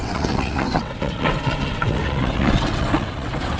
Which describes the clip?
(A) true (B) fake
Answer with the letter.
B